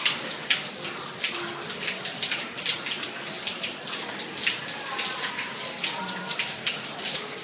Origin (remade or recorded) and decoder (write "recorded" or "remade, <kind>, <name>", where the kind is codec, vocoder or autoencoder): recorded